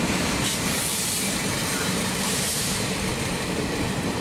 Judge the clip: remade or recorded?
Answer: remade